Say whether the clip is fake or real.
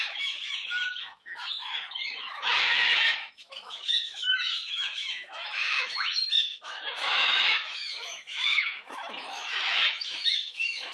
fake